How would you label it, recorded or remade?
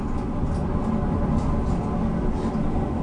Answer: recorded